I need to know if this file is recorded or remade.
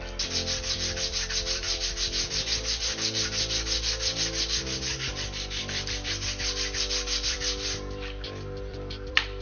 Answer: remade